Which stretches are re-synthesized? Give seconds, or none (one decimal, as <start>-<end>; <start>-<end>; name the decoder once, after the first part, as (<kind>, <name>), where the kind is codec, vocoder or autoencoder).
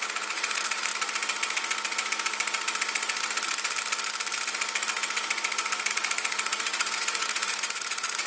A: 0.0-0.9 (vocoder, Vocos); 5.9-8.3